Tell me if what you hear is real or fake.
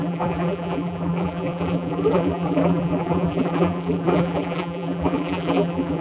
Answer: fake